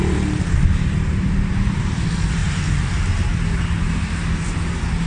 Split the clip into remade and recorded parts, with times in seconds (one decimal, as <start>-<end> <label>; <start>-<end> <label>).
0.0-5.1 recorded